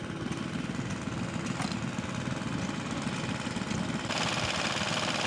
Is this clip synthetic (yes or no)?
no